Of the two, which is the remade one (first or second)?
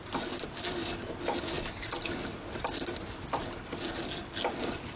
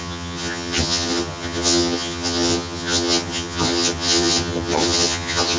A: second